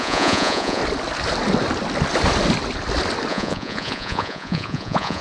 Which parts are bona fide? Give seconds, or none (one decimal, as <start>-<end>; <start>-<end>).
0.8-3.3